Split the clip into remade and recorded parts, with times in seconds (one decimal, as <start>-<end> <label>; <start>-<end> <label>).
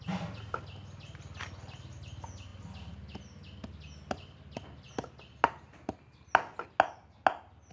0.0-7.7 recorded